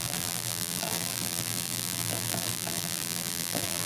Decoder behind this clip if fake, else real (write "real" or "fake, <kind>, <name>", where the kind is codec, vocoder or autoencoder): fake, vocoder, BigVGAN v2